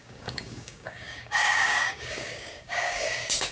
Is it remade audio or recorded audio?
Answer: remade